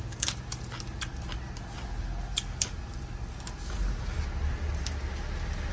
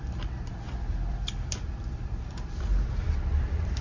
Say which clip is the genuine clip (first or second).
first